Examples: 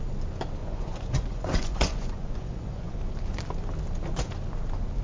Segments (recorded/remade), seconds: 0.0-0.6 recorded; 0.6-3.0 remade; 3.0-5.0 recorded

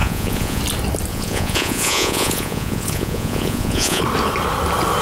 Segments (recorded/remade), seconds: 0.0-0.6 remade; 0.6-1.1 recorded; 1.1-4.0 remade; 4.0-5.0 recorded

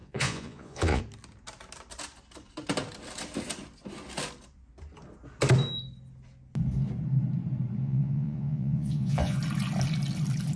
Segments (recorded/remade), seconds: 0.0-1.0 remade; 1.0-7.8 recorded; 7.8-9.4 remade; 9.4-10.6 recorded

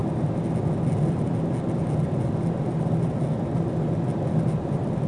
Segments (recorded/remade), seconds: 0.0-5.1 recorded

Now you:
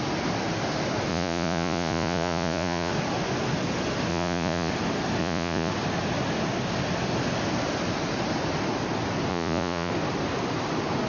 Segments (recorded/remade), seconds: 0.0-1.1 recorded; 1.1-2.9 remade; 2.9-4.1 recorded; 4.1-4.7 remade; 4.7-5.2 recorded; 5.2-5.7 remade; 5.7-9.3 recorded; 9.3-9.9 remade; 9.9-11.1 recorded

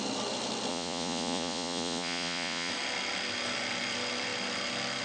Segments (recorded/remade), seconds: 0.0-0.7 recorded; 0.7-2.7 remade; 2.7-5.0 recorded

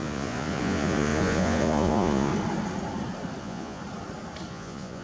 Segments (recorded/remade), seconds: 0.0-2.3 remade; 2.3-3.4 recorded; 3.4-3.8 remade; 3.8-4.5 recorded; 4.5-5.0 remade